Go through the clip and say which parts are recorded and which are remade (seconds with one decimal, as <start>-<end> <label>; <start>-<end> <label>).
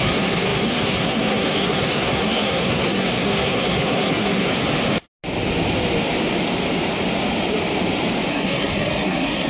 0.0-4.5 remade; 4.5-8.3 recorded; 8.3-9.5 remade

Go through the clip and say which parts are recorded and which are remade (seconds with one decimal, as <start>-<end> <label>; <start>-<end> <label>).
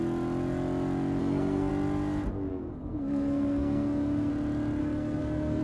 0.0-1.2 recorded; 1.2-1.7 remade; 1.7-2.5 recorded; 2.5-4.3 remade; 4.3-4.8 recorded; 4.8-5.6 remade